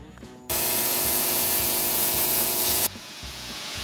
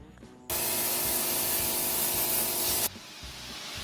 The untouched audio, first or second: second